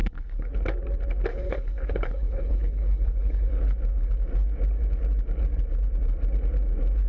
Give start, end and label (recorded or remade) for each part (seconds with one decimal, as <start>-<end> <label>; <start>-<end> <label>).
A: 0.0-0.5 remade; 0.5-1.3 recorded; 1.3-3.5 remade; 3.5-7.1 recorded